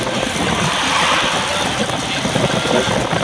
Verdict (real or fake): real